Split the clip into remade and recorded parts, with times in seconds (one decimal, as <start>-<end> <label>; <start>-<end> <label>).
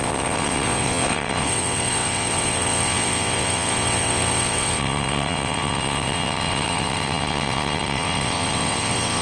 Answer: 0.0-9.2 remade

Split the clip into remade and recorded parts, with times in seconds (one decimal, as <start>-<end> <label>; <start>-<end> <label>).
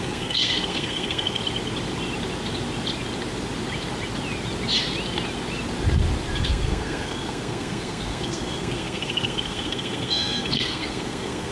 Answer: 0.0-1.4 remade; 1.4-6.4 recorded; 6.4-11.5 remade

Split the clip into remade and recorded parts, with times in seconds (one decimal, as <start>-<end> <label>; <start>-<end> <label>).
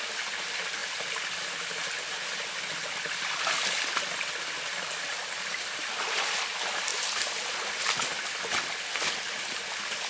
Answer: 0.0-10.1 recorded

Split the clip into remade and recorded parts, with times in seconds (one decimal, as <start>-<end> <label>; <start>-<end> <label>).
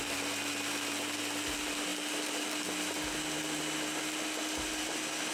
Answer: 0.0-5.3 recorded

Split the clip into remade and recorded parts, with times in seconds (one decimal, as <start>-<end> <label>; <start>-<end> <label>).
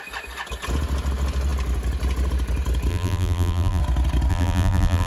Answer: 0.0-2.9 recorded; 2.9-3.8 remade; 3.8-4.3 recorded; 4.3-5.1 remade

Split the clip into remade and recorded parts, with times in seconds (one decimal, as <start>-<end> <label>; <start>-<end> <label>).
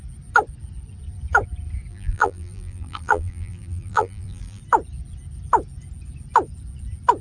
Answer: 0.0-1.9 recorded; 1.9-4.6 remade; 4.6-7.2 recorded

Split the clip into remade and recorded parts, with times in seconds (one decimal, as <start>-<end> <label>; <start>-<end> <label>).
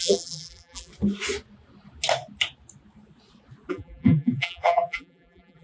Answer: 0.0-0.9 remade; 0.9-3.7 recorded; 3.7-5.6 remade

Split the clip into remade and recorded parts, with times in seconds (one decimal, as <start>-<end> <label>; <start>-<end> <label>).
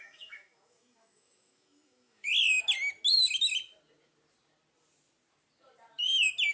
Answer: 0.0-2.3 remade; 2.3-6.5 recorded